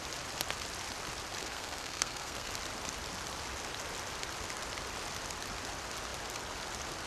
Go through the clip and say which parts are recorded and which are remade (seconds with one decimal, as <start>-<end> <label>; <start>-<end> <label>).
0.0-1.4 recorded; 1.4-2.5 remade; 2.5-7.1 recorded